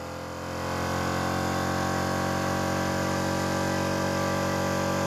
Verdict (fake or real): real